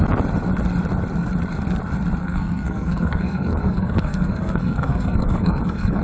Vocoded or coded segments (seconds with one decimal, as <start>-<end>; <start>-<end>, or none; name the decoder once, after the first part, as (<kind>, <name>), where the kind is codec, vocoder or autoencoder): 2.2-6.0 (codec, SNAC)